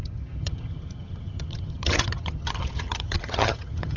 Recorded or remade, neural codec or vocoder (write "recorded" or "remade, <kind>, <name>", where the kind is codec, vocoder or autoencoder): remade, vocoder, HiFi-GAN